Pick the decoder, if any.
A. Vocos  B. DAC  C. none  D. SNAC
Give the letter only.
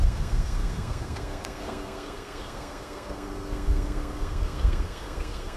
D